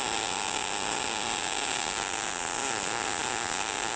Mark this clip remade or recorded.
recorded